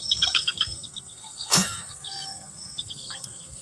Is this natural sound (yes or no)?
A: no